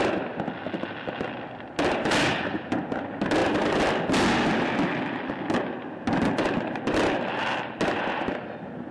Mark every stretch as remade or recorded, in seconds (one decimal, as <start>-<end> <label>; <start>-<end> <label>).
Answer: 0.0-8.9 recorded